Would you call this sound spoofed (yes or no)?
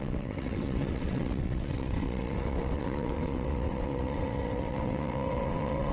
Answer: yes